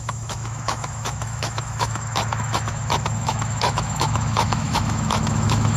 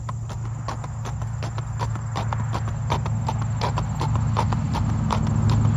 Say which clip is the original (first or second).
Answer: second